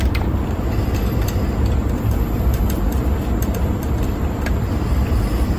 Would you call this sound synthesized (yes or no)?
yes